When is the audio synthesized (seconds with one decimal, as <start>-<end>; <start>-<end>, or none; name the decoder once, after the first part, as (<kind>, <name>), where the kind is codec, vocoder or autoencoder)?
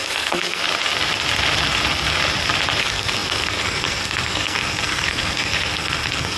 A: 0.0-0.6 (codec, SNAC); 2.8-6.4